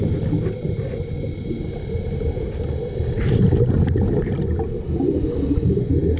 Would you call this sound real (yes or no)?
yes